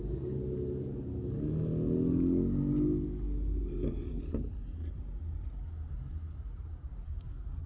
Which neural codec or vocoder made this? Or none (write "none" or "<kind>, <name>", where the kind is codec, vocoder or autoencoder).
none